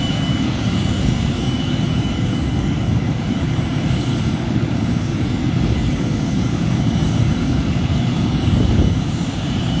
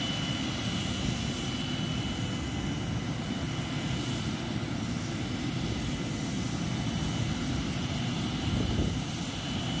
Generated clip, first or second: first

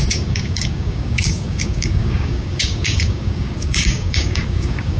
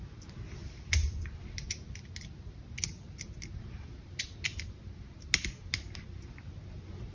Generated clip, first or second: first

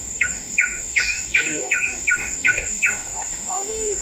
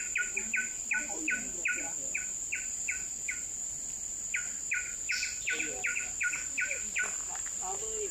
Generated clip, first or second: first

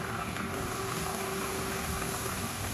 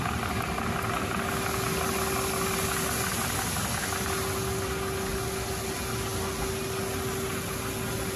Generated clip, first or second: first